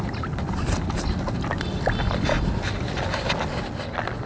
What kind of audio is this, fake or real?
real